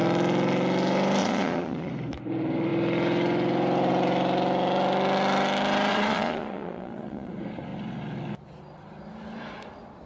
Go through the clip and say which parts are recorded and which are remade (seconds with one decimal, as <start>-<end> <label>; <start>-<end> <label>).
0.0-1.2 recorded; 1.2-1.9 remade; 1.9-5.9 recorded; 5.9-7.3 remade; 7.3-10.1 recorded

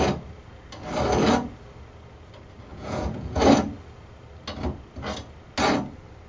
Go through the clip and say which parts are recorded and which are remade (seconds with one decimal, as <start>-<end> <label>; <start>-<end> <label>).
0.0-2.7 recorded; 2.7-3.4 remade; 3.4-6.3 recorded